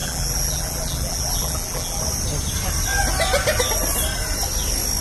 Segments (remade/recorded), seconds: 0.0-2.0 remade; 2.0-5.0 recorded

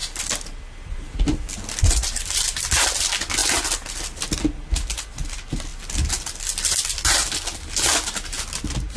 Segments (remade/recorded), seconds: 0.0-3.0 remade; 3.0-5.7 recorded; 5.7-7.0 remade; 7.0-9.0 recorded

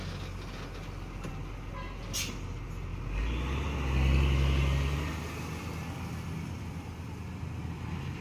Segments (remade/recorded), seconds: 0.0-8.2 recorded

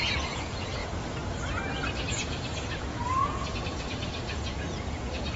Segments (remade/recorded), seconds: 0.0-0.8 remade; 0.8-2.1 recorded; 2.1-5.4 remade